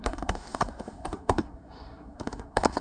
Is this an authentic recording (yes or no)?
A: no